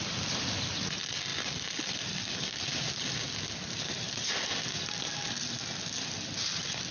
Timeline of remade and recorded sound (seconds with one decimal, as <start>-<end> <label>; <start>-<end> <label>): 0.0-6.9 recorded